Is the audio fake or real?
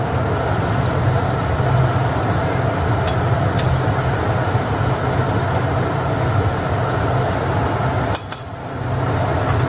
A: real